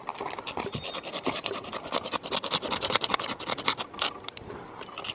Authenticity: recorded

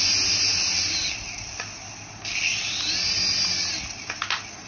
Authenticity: recorded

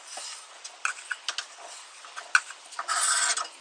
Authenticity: recorded